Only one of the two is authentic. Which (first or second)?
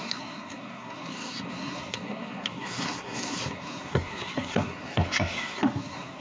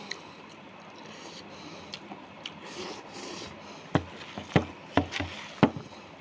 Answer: second